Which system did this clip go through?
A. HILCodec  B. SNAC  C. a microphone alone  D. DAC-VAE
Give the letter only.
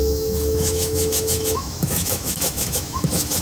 D